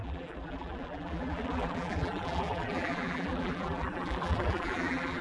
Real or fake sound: fake